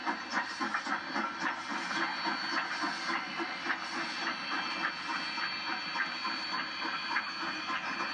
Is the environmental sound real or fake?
real